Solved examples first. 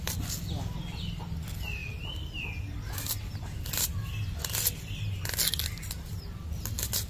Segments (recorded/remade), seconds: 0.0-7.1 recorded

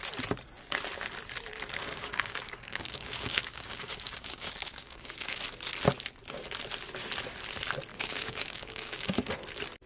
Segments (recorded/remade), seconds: 0.0-1.8 recorded; 1.8-5.4 remade; 5.4-7.9 recorded; 7.9-9.3 remade; 9.3-9.9 recorded

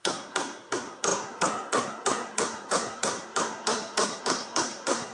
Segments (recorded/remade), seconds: 0.0-5.1 remade

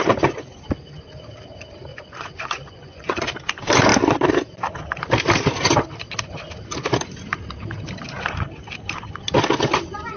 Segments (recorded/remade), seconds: 0.0-1.9 recorded; 1.9-3.2 remade; 3.2-10.2 recorded

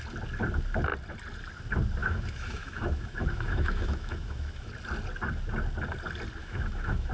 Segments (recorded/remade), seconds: 0.0-2.0 recorded; 2.0-4.7 remade; 4.7-6.4 recorded; 6.4-7.1 remade

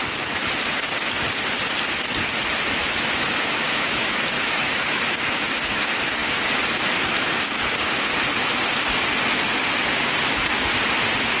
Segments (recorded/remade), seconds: 0.0-2.8 recorded; 2.8-5.0 remade; 5.0-11.4 recorded

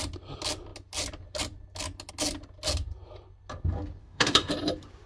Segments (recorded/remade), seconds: 0.0-4.0 recorded; 4.0-4.5 remade; 4.5-5.1 recorded

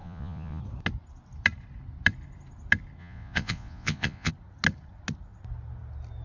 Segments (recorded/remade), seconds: 0.0-0.6 remade; 0.6-3.0 recorded; 3.0-4.3 remade; 4.3-6.2 recorded